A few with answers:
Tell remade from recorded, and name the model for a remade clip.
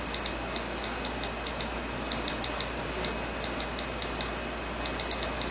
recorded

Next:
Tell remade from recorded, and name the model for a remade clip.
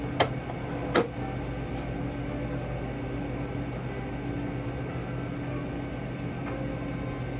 recorded